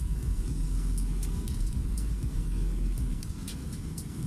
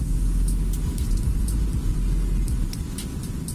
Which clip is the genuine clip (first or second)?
second